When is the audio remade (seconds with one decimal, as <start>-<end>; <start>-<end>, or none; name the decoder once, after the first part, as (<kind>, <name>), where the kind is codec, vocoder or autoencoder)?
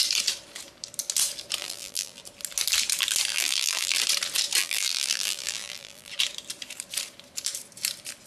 1.6-2.2 (vocoder, BigVGAN v2); 3.3-4.0; 4.6-6.1